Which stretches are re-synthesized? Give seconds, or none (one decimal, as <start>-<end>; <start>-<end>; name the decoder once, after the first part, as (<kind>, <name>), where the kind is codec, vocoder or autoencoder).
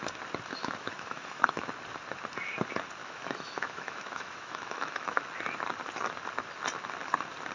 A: 0.6-1.7 (autoencoder, DAC-VAE); 3.0-5.2